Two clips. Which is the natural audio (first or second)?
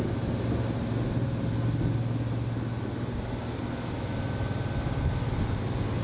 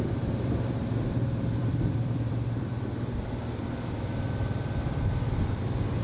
first